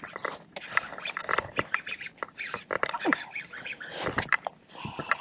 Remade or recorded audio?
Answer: recorded